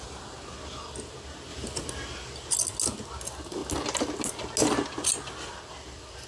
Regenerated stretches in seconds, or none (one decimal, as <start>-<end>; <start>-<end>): none